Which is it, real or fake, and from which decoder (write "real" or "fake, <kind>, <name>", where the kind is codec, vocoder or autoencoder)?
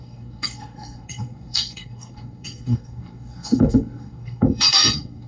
fake, codec, SNAC